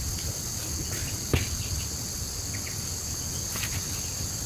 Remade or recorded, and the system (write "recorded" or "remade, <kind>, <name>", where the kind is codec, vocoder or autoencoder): recorded